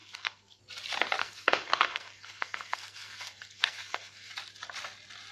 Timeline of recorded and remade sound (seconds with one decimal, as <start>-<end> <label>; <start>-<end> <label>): 0.0-0.6 remade; 0.6-1.2 recorded; 1.2-4.3 remade; 4.3-5.3 recorded

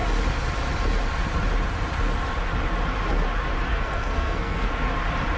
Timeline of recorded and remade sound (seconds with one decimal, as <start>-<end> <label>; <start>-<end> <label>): 0.0-3.7 recorded; 3.7-4.7 remade; 4.7-5.4 recorded

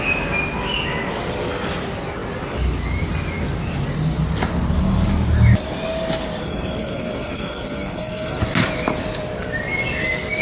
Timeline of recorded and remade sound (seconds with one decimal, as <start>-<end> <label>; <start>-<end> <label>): 0.0-6.4 recorded; 6.4-8.4 remade; 8.4-10.4 recorded

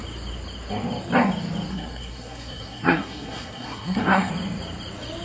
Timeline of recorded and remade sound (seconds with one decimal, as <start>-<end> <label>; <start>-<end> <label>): 0.0-1.7 recorded; 1.7-4.3 remade; 4.3-5.2 recorded

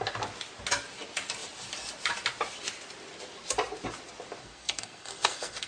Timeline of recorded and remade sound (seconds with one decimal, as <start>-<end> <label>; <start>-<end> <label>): 0.0-4.4 recorded; 4.4-5.7 remade

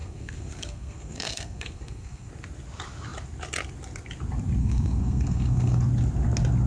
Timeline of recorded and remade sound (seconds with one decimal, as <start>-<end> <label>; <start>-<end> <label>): 0.0-2.3 remade; 2.3-4.6 recorded; 4.6-5.8 remade; 5.8-6.7 recorded

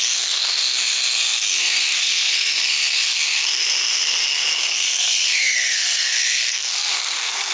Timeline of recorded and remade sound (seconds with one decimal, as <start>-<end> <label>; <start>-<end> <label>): 0.0-7.5 remade

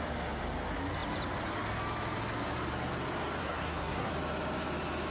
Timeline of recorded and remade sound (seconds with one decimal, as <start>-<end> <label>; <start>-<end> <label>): 0.0-3.4 recorded; 3.4-4.1 remade; 4.1-5.1 recorded